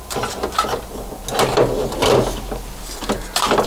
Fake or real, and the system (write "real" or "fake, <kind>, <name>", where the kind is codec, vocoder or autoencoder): real